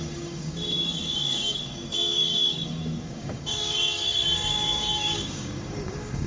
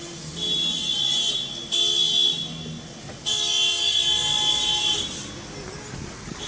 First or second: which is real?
second